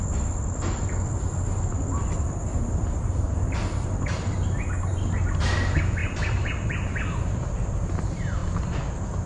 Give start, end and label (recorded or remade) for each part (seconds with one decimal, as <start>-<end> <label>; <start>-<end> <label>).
0.0-9.3 recorded